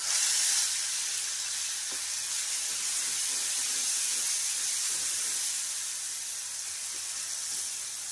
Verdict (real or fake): real